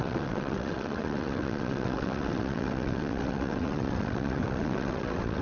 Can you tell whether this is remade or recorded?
remade